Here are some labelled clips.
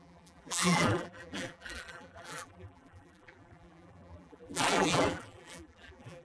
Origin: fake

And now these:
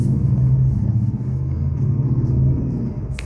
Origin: fake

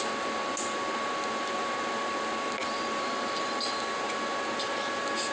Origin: real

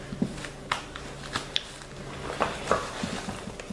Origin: real